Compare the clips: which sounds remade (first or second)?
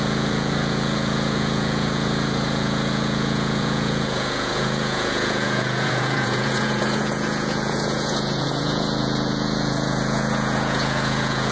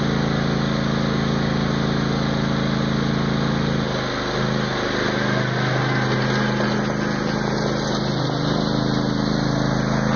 first